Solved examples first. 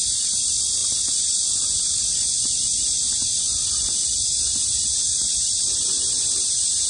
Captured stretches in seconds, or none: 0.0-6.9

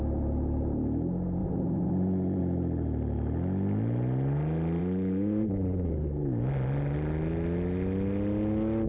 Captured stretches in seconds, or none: 0.0-1.4; 2.4-4.8; 5.9-8.9

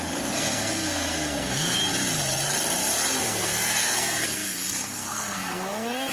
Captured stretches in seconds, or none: 1.8-3.2

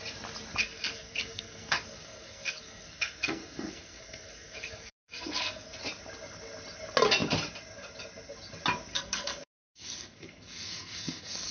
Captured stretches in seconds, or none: 0.0-0.6; 5.8-8.9

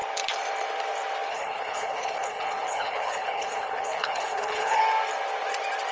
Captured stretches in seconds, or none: 0.0-1.3; 4.8-5.9

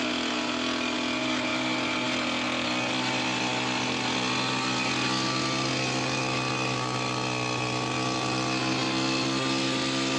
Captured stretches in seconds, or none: 0.0-10.2

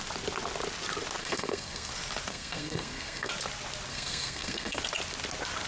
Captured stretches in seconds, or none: 0.0-1.2; 1.9-2.3; 3.3-3.9; 4.8-5.7

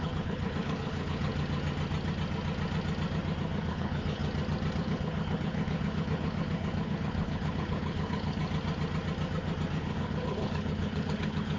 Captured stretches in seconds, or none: 1.3-3.7; 4.2-4.8; 8.4-9.7